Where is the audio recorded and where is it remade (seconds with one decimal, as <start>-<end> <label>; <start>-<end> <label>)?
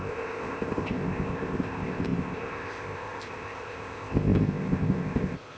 0.0-5.6 remade